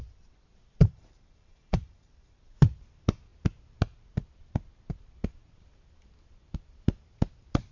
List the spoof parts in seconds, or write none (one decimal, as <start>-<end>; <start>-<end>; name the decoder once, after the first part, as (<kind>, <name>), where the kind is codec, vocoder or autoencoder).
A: 0.8-2.3 (vocoder, BigVGAN v2)